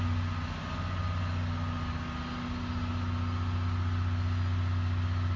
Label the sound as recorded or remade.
recorded